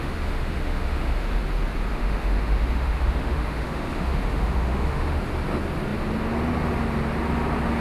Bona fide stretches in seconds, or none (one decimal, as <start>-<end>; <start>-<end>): 1.4-1.9; 5.2-7.8